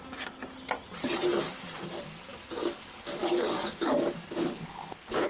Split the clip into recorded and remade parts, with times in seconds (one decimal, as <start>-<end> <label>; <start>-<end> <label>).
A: 0.0-4.4 recorded; 4.4-5.3 remade